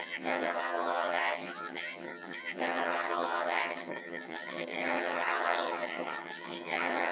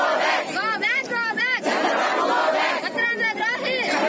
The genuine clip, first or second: second